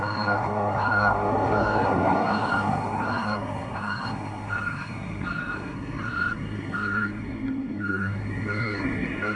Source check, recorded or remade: remade